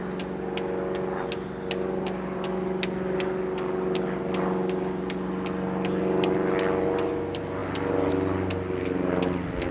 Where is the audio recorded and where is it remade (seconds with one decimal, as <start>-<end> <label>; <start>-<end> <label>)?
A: 0.0-9.7 recorded